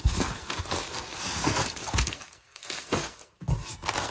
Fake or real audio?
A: fake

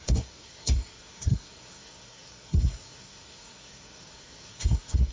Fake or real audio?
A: fake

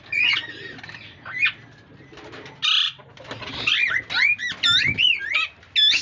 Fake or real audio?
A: real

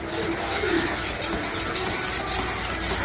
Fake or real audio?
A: real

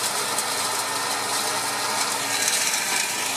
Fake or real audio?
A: real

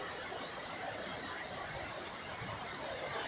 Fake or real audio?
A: real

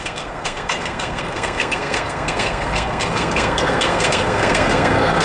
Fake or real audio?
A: fake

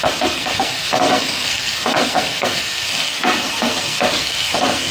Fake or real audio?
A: fake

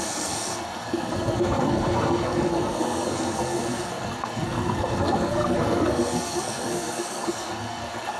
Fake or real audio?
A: fake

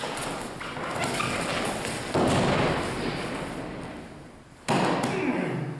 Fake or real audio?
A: real